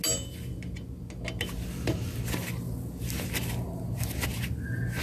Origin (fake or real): real